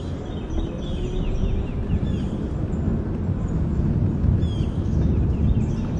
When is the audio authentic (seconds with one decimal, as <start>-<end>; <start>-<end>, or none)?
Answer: 0.0-6.0

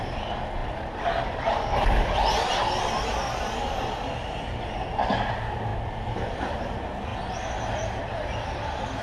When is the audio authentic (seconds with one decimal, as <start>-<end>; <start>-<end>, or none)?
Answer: 0.0-9.0